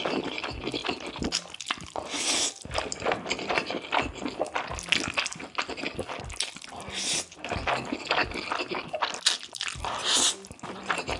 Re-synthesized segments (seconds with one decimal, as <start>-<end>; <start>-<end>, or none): none